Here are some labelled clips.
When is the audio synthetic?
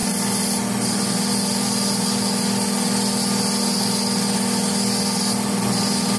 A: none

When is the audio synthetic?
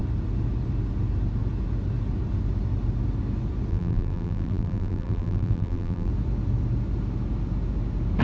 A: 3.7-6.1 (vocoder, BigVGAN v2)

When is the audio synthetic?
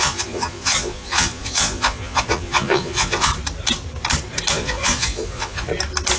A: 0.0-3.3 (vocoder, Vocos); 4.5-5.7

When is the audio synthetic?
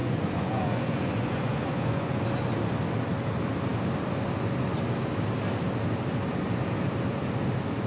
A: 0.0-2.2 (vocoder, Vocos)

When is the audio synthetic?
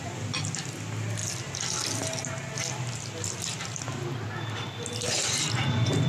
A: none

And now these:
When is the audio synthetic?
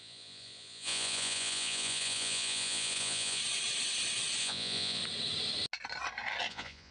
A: 0.0-3.4 (vocoder, Vocos); 4.4-5.0; 6.5-6.9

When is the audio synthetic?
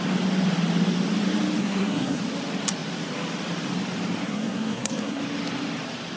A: 1.6-2.2 (codec, SNAC); 4.2-5.2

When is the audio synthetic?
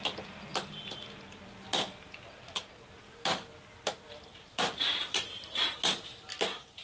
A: none